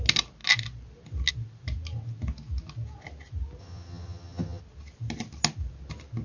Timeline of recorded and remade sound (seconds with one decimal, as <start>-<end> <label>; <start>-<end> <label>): 0.0-3.6 recorded; 3.6-4.6 remade; 4.6-6.2 recorded